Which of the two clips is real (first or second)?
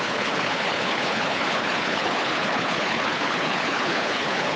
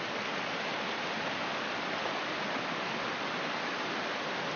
second